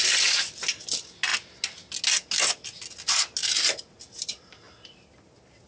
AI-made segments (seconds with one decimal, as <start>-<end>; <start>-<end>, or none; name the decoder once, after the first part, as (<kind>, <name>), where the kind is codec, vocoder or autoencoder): none